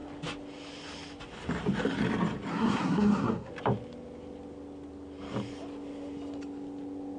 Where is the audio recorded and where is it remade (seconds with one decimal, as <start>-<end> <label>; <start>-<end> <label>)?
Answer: 0.0-2.5 recorded; 2.5-3.5 remade; 3.5-7.2 recorded